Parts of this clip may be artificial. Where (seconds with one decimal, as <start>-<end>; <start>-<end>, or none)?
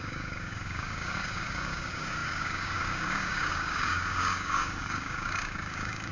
0.0-6.1